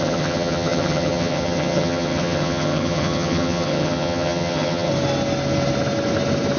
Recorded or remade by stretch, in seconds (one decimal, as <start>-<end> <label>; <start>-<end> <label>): 0.0-4.9 remade; 4.9-6.6 recorded